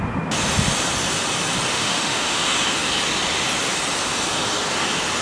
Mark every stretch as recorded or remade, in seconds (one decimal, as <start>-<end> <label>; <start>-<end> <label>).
0.0-1.7 recorded; 1.7-2.4 remade; 2.4-5.2 recorded